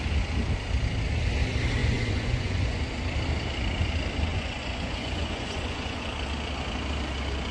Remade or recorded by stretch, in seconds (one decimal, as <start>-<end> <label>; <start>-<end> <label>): 0.0-1.8 recorded; 1.8-2.8 remade; 2.8-4.3 recorded; 4.3-6.0 remade; 6.0-7.5 recorded